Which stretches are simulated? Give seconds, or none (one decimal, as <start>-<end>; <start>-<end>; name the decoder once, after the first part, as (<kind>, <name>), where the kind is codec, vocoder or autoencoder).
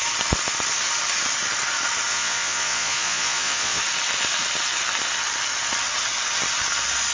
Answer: 2.1-3.8 (vocoder, Vocos)